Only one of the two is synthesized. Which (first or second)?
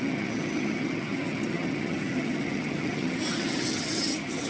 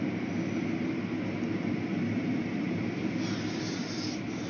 first